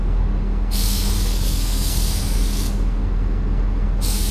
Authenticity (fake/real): fake